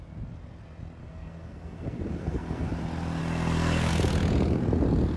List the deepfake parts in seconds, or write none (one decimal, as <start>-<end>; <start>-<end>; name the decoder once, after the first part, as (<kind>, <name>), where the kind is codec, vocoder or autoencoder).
1.0-2.7 (codec, SNAC); 3.2-3.9